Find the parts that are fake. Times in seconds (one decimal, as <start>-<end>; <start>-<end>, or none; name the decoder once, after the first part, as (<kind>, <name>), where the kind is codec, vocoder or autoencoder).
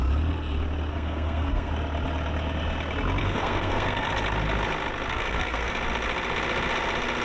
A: 0.9-1.7 (codec, SNAC); 3.2-4.1; 5.1-5.8